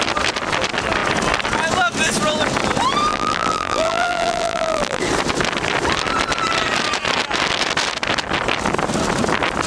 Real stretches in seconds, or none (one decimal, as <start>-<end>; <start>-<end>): 0.0-3.1; 5.0-9.7